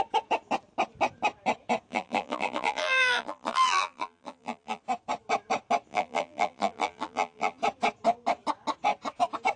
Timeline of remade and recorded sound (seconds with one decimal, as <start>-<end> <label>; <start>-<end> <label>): 0.0-1.9 recorded; 1.9-4.8 remade; 4.8-5.9 recorded; 5.9-7.6 remade; 7.6-9.6 recorded